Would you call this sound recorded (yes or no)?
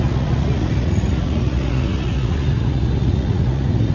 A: no